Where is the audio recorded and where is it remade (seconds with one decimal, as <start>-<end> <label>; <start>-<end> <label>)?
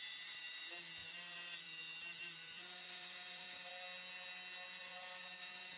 0.0-0.6 remade; 0.6-1.0 recorded; 1.0-1.8 remade; 1.8-2.2 recorded; 2.2-3.7 remade; 3.7-4.8 recorded; 4.8-5.8 remade